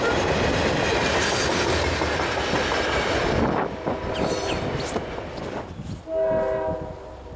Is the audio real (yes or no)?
yes